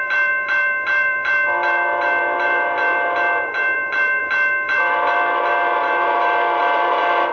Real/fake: fake